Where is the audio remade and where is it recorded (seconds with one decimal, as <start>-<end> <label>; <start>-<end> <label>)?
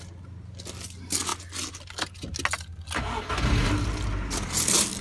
0.0-5.0 recorded